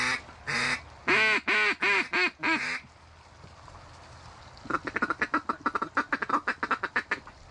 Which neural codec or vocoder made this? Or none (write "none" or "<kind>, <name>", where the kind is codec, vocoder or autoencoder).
none